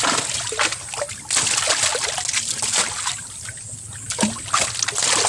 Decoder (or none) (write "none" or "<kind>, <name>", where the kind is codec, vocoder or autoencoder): none